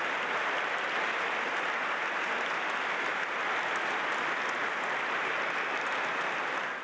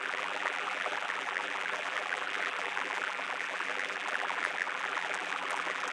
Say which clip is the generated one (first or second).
second